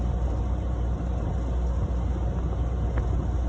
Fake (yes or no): no